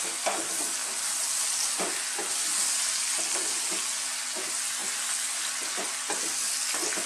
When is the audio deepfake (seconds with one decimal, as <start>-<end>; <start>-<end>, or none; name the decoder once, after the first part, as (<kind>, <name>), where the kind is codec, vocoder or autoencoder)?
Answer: none